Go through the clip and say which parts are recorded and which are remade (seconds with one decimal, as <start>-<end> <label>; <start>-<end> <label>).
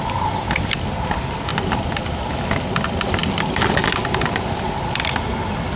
0.0-5.8 recorded